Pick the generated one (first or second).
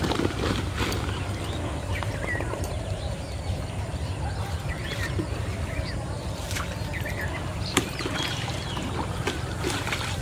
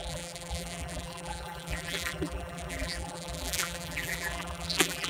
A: second